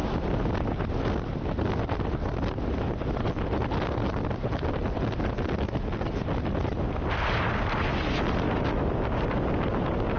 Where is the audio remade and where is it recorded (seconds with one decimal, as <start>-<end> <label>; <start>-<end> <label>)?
0.0-10.2 recorded